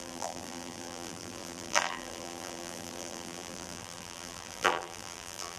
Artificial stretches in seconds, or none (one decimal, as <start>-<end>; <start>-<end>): 0.0-5.6